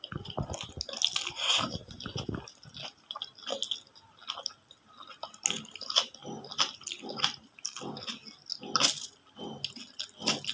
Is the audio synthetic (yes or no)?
no